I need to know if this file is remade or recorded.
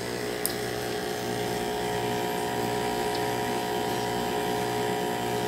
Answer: recorded